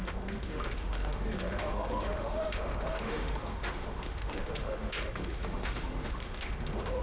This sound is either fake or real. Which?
fake